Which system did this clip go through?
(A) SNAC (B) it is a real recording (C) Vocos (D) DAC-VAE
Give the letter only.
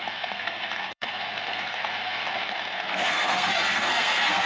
A